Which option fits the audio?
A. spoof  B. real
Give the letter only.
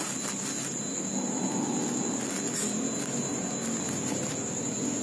B